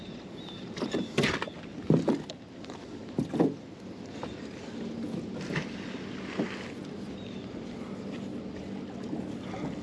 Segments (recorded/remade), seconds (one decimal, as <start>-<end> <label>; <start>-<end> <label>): 0.0-9.8 recorded

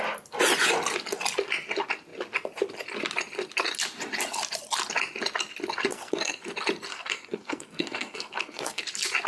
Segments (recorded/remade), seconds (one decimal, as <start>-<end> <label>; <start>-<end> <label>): 0.0-5.9 recorded; 5.9-6.4 remade; 6.4-6.9 recorded; 6.9-8.8 remade; 8.8-9.3 recorded